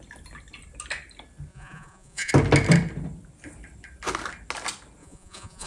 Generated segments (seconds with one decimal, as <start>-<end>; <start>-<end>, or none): 1.5-2.3; 5.0-5.7